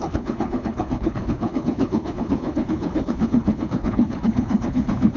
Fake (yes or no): yes